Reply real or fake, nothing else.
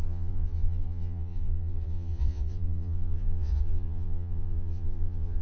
fake